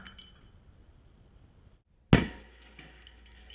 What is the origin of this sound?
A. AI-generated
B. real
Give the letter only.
B